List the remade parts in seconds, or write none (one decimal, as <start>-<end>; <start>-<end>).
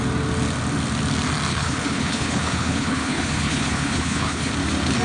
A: 1.5-4.5